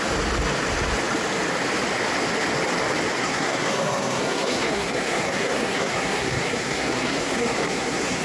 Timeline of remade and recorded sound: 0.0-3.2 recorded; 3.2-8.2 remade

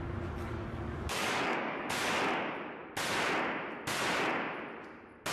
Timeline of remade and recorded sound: 0.0-0.5 recorded; 0.5-1.9 remade; 1.9-5.3 recorded

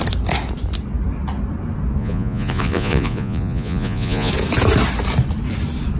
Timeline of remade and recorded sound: 0.0-2.0 recorded; 2.0-4.3 remade; 4.3-6.0 recorded